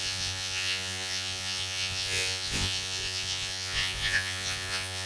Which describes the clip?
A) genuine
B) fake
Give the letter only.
B